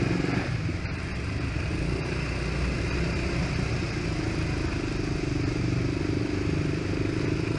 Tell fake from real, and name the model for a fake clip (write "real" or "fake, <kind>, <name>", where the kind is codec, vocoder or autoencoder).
real